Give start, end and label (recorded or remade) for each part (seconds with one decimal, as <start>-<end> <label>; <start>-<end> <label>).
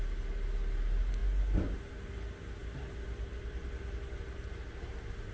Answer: 0.0-2.6 recorded; 2.6-4.5 remade; 4.5-5.3 recorded